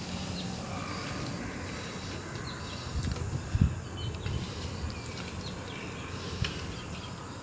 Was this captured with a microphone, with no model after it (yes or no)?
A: yes